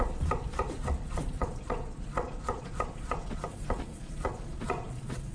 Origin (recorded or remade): remade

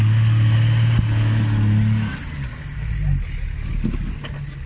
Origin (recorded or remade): recorded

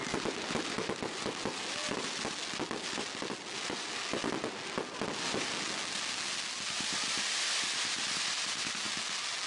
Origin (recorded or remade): recorded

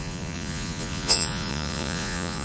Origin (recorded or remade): remade